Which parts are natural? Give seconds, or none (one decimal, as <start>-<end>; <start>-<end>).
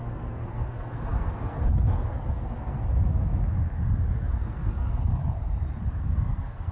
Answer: 2.8-4.2; 5.1-5.9